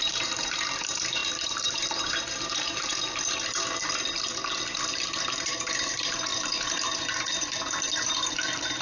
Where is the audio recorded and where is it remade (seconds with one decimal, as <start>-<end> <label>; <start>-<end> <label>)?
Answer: 0.0-2.9 remade; 2.9-4.9 recorded; 4.9-8.8 remade